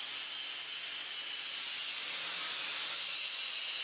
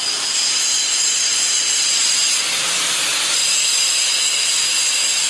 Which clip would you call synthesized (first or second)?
second